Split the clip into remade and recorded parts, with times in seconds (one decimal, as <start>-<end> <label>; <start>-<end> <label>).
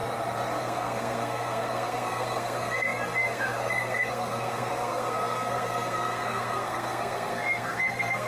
0.0-0.6 recorded; 0.6-8.3 remade